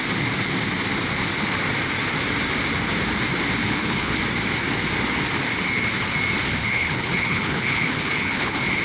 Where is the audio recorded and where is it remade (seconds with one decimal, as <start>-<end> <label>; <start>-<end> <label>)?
0.0-3.6 recorded; 3.6-4.2 remade; 4.2-6.6 recorded; 6.6-8.8 remade